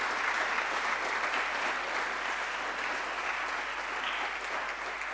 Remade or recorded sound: recorded